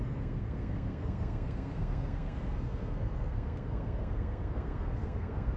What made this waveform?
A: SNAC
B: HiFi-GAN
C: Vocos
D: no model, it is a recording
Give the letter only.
A